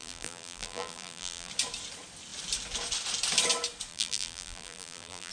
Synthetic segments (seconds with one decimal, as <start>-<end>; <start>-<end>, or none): 0.0-1.5; 3.9-5.3